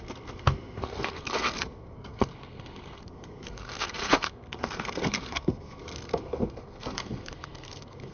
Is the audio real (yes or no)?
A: no